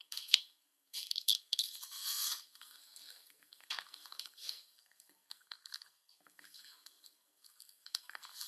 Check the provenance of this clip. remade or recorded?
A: remade